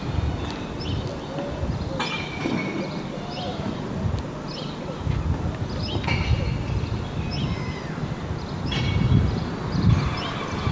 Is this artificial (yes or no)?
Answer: no